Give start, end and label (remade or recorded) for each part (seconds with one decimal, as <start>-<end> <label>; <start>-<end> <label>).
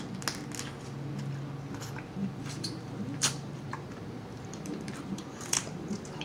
0.0-2.2 recorded; 2.2-6.2 remade